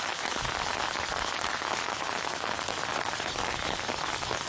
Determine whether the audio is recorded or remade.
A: recorded